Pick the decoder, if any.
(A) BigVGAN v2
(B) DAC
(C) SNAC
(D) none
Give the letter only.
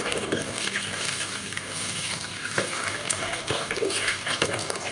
B